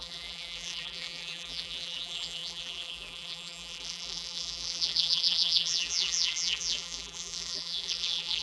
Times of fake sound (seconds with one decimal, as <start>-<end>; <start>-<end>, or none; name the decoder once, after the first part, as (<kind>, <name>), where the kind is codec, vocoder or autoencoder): 0.0-8.4 (vocoder, BigVGAN v2)